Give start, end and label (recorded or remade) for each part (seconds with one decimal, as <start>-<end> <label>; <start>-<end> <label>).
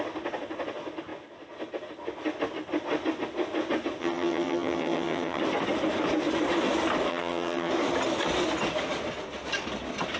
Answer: 0.0-4.0 recorded; 4.0-5.4 remade; 5.4-7.1 recorded; 7.1-7.7 remade; 7.7-10.2 recorded